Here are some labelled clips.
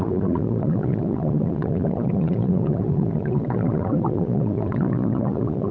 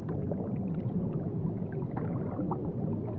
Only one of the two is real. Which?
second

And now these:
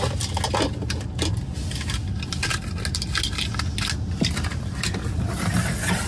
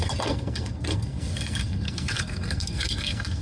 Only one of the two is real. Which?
first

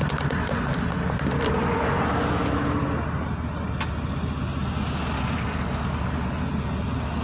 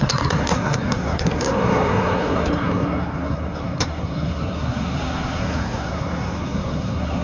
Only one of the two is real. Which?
first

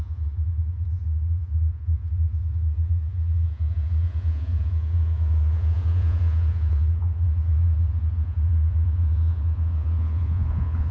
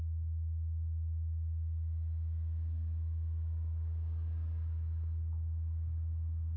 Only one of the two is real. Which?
second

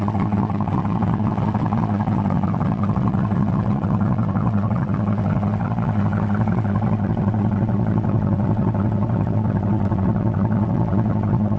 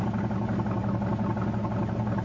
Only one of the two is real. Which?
second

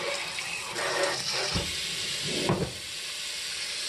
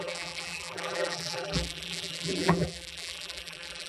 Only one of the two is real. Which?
first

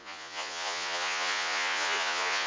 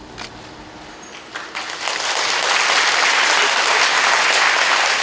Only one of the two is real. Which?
second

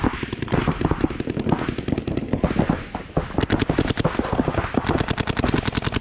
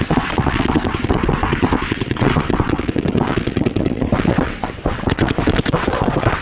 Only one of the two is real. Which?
first